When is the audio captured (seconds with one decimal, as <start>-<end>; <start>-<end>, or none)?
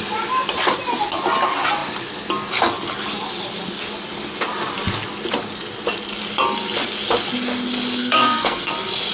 0.0-8.0; 8.7-9.1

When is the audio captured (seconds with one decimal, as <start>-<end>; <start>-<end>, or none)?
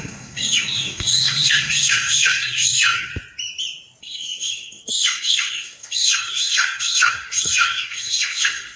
3.1-4.0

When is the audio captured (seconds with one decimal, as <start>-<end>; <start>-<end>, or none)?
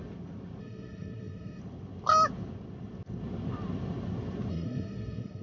0.0-0.6; 1.6-4.5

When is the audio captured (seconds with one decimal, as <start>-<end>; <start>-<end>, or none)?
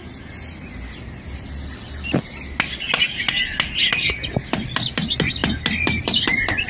0.0-6.7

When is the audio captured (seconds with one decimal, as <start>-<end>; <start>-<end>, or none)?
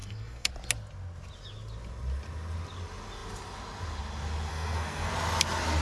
0.5-4.5; 5.1-5.8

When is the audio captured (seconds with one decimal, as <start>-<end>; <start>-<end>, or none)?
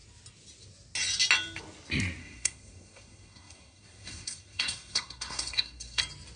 0.0-2.2; 6.0-6.4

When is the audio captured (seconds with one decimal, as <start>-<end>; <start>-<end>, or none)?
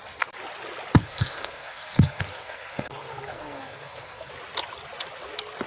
0.0-1.0; 4.3-5.7